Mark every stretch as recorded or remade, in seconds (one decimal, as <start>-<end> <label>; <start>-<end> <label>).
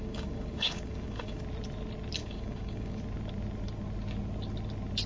0.0-1.4 remade; 1.4-2.2 recorded; 2.2-3.0 remade; 3.0-5.1 recorded